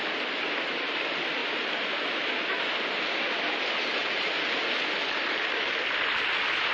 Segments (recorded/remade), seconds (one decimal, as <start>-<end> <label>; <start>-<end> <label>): 0.0-6.7 recorded